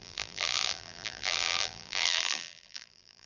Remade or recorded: remade